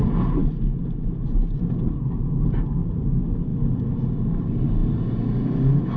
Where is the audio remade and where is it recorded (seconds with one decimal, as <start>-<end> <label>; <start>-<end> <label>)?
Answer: 0.0-6.0 recorded